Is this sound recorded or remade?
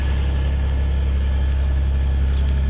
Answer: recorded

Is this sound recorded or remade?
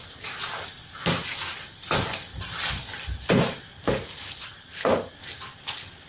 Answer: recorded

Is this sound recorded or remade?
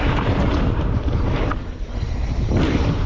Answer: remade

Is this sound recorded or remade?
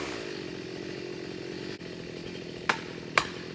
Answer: remade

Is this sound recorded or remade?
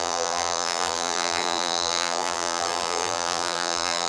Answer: remade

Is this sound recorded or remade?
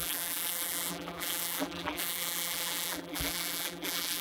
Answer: remade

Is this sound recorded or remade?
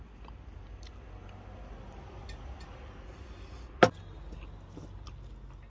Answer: recorded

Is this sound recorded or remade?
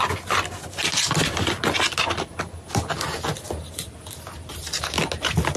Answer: recorded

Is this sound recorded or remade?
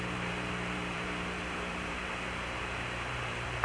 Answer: remade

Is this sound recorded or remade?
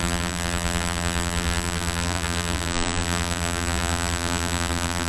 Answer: remade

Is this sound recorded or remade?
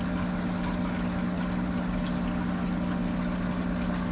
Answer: recorded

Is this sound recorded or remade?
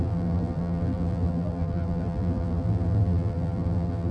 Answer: remade